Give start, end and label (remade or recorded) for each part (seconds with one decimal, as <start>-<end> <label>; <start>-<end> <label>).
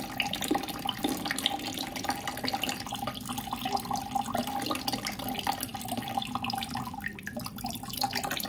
0.0-8.5 recorded